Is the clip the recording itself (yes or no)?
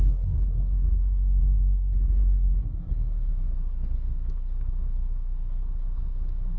no